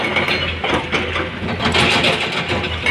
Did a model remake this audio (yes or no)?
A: no